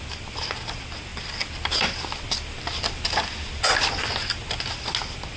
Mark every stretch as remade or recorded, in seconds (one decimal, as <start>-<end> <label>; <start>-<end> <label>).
0.0-5.4 recorded